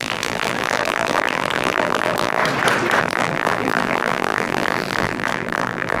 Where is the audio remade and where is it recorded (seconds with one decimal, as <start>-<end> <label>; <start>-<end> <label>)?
0.0-2.4 remade; 2.4-3.0 recorded; 3.0-6.0 remade